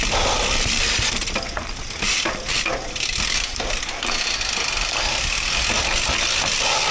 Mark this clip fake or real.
real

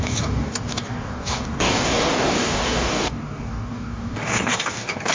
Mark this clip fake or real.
fake